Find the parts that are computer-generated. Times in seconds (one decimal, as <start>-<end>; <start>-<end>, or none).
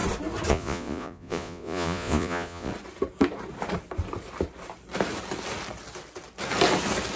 0.5-2.7